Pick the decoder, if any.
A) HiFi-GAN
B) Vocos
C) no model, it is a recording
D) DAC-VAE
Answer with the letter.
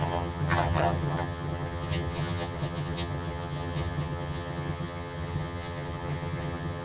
A